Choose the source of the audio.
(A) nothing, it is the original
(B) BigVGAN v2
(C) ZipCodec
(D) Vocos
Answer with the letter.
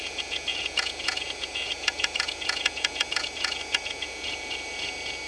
D